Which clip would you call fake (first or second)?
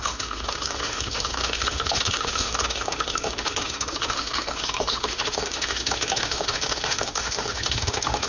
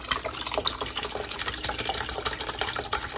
first